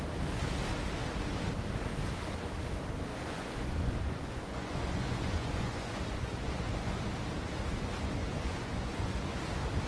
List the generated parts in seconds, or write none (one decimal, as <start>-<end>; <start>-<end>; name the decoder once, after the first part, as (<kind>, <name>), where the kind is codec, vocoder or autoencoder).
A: 3.1-7.1 (vocoder, Vocos); 8.2-9.4